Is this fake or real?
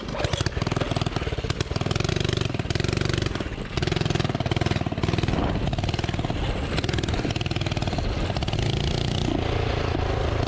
real